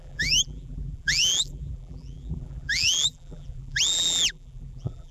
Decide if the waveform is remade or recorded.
remade